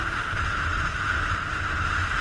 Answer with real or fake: real